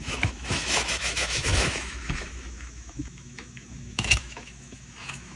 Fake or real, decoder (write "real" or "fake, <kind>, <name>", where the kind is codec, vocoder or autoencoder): fake, autoencoder, DAC-VAE